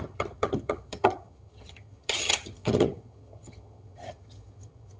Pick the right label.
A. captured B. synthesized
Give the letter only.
B